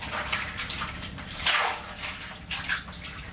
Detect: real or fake real